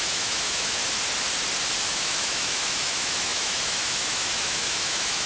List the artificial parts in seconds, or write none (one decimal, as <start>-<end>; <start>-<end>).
0.0-0.8; 1.9-5.3

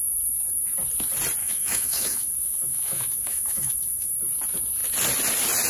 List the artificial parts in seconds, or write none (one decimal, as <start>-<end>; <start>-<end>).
1.4-4.1

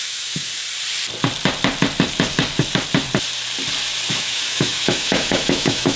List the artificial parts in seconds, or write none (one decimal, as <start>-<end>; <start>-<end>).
0.0-0.5; 4.1-6.0

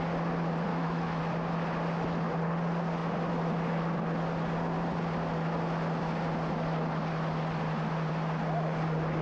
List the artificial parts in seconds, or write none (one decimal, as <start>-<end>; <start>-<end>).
0.7-1.2

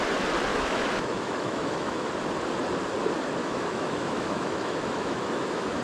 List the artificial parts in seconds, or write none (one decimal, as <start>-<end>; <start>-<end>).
0.5-2.1; 3.4-5.8

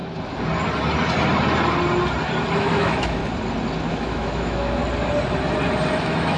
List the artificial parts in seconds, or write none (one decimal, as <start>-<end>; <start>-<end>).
2.5-3.2; 3.9-4.8; 5.9-6.4

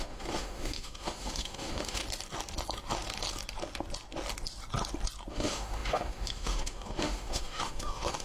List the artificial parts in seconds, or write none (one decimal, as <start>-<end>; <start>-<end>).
0.0-2.0; 5.3-8.2